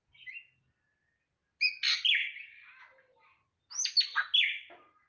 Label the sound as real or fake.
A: real